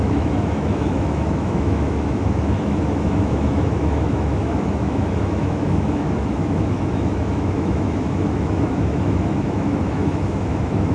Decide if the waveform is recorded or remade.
remade